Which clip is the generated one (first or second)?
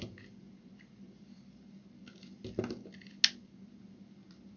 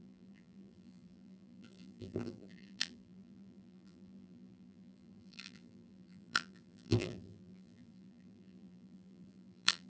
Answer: second